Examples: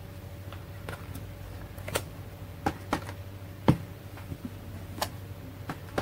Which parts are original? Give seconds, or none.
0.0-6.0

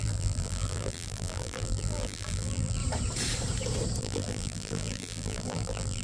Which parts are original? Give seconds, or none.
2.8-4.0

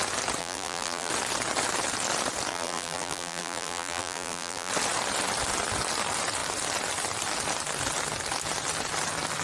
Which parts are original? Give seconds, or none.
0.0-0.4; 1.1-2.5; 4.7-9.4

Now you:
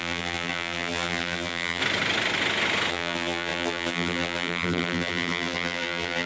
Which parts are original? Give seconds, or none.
1.8-2.9

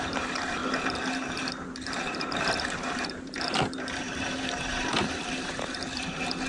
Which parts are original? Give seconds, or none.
0.6-1.2

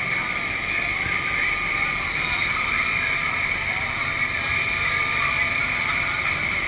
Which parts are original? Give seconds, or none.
none